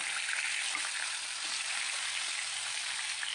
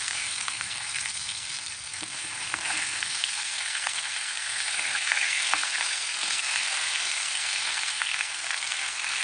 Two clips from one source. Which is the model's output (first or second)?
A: second